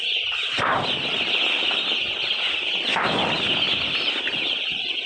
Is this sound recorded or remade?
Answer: recorded